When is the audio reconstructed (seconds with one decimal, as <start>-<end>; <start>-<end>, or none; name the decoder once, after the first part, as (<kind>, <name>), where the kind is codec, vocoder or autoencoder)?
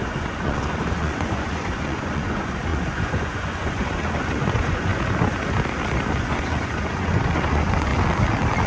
0.0-4.9 (vocoder, Vocos); 6.2-7.9